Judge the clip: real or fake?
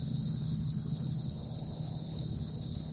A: fake